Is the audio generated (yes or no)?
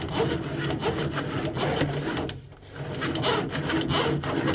no